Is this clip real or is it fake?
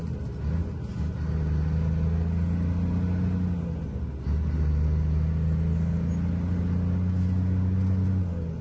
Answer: real